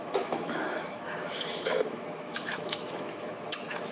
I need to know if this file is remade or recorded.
remade